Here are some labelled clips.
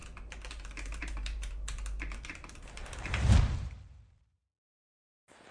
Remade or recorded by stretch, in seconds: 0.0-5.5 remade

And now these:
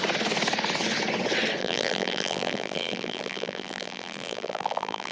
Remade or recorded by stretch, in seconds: 0.0-1.6 recorded; 1.6-5.1 remade